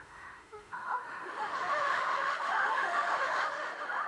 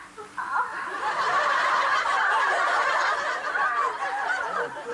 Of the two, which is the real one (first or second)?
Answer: second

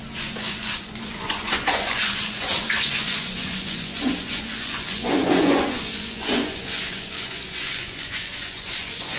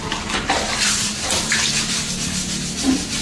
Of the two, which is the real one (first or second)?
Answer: second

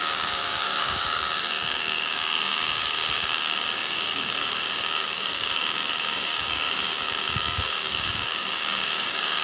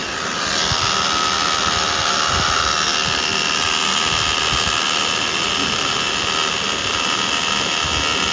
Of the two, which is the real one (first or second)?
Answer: second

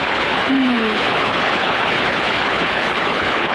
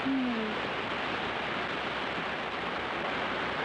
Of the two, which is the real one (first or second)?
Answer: second